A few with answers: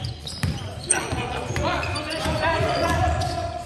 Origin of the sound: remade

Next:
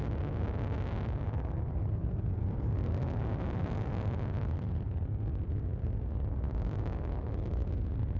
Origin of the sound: recorded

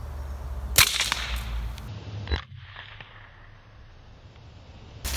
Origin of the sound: recorded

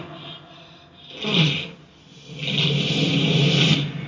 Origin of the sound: recorded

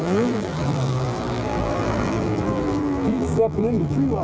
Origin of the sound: remade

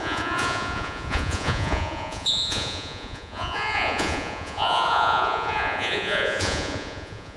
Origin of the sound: remade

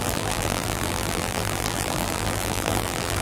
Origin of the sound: remade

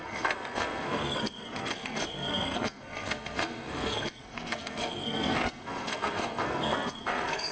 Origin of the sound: remade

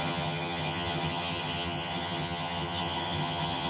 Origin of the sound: remade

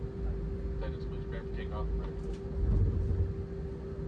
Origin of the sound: recorded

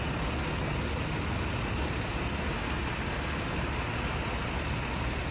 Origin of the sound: recorded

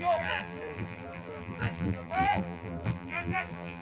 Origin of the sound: remade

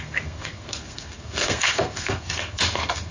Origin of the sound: remade